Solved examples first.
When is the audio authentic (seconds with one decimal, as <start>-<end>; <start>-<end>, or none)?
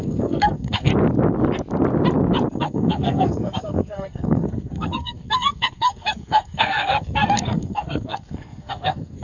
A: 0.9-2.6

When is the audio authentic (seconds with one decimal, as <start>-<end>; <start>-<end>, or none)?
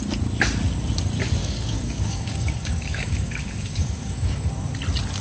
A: 0.0-1.4; 4.5-5.2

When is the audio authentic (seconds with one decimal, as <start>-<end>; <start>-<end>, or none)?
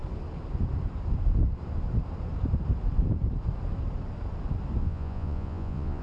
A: 0.0-4.8